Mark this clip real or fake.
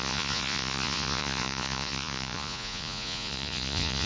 fake